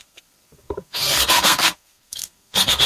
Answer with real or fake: fake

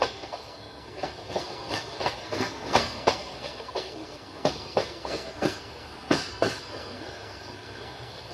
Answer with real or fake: fake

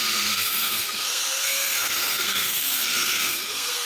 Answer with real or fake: fake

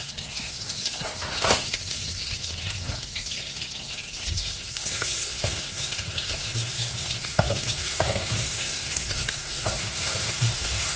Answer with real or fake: fake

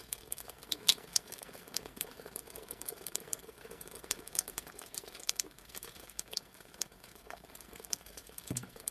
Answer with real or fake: fake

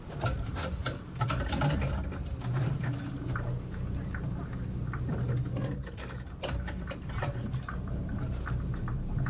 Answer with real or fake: real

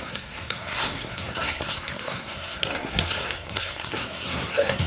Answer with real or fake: fake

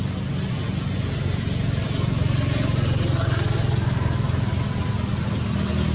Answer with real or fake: real